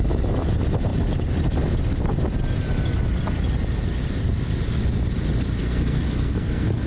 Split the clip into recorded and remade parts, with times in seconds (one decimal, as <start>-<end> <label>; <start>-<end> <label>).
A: 0.0-5.6 recorded; 5.6-6.9 remade